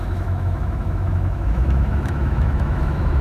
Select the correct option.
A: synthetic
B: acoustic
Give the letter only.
A